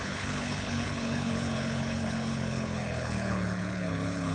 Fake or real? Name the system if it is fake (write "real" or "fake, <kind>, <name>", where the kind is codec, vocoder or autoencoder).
fake, codec, HILCodec